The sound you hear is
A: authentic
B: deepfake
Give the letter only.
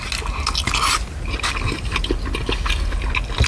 A